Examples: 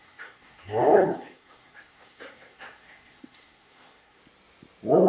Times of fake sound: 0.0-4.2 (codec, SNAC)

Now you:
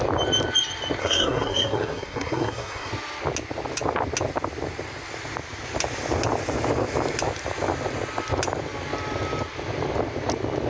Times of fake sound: 1.0-2.9 (codec, SNAC)

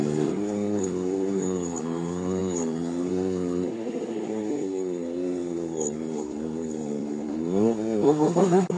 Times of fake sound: 0.0-8.8 (codec, SNAC)

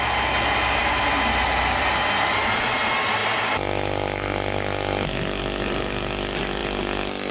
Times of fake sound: none